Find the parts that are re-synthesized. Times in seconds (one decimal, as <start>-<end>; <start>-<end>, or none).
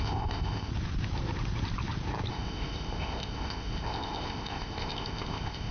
0.0-0.7; 2.3-5.7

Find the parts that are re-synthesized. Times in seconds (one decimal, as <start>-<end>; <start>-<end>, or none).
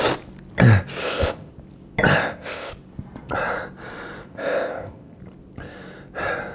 1.0-1.5; 2.1-2.7; 4.3-5.2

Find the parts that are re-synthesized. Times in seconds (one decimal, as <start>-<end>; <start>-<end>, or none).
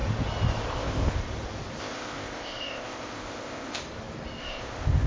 0.7-1.2; 1.8-3.8; 4.4-5.1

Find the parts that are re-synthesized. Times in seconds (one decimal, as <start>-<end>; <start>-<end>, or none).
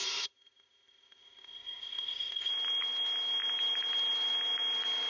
0.0-2.5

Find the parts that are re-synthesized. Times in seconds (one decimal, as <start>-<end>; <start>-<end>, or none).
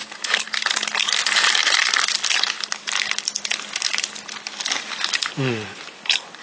none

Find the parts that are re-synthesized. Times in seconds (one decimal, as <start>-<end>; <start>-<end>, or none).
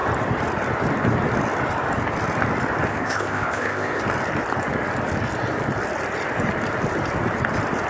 2.9-4.0